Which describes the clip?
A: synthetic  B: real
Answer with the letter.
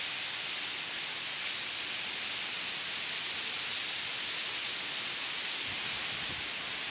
B